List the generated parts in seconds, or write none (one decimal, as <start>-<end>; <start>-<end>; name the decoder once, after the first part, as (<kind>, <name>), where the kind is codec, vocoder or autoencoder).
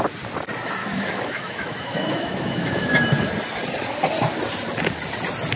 0.8-3.3 (autoencoder, DAC-VAE)